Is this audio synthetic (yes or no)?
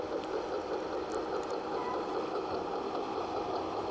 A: no